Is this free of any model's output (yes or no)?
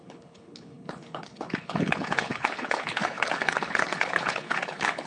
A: no